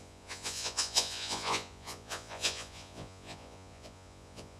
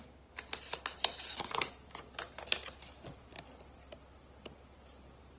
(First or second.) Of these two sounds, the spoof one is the first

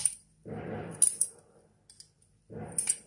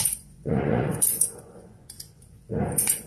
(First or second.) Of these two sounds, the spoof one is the second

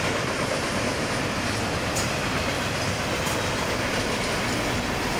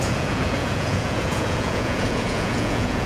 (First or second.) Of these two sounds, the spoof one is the second